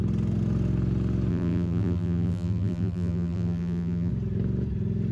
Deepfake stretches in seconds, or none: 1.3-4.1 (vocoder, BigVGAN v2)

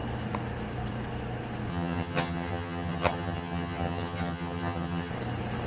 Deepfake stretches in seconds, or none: 1.7-5.1 (vocoder, HiFi-GAN)

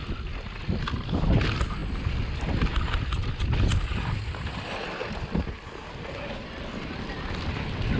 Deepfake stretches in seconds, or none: none

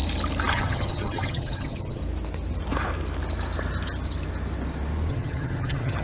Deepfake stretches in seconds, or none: 0.5-2.0 (vocoder, HiFi-GAN); 5.1-6.0